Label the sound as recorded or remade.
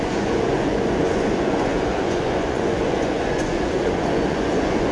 remade